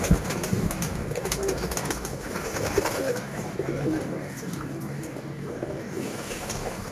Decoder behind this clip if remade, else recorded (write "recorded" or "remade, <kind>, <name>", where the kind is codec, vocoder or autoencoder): remade, codec, DAC